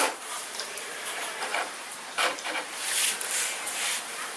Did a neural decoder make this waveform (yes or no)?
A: yes